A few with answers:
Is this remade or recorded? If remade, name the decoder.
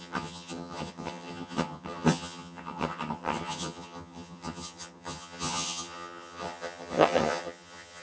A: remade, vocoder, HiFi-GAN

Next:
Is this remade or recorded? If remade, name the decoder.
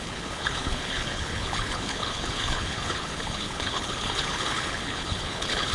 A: remade, codec, HILCodec